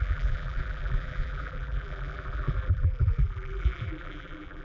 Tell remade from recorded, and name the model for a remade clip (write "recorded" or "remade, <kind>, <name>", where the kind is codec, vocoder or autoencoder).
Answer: remade, vocoder, BigVGAN v2